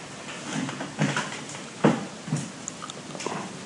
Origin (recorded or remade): recorded